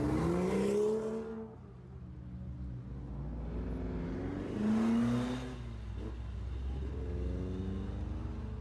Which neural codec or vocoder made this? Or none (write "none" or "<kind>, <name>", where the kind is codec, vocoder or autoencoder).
none